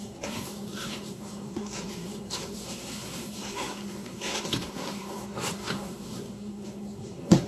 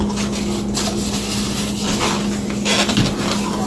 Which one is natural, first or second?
second